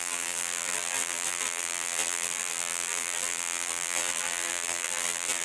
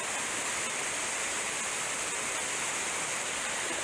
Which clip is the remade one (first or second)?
first